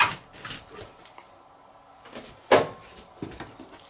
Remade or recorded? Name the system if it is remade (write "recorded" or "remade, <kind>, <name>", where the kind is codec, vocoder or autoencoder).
recorded